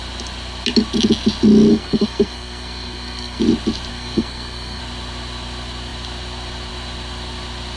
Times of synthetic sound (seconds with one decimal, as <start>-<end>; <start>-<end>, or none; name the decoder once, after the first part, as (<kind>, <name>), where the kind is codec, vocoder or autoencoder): 1.7-3.4 (codec, SNAC); 3.9-4.8